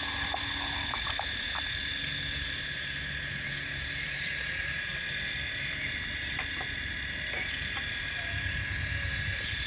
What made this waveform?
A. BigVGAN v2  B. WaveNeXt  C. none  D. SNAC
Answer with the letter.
C